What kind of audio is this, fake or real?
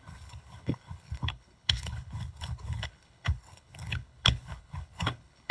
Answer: fake